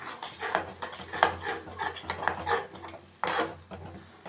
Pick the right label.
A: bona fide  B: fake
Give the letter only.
A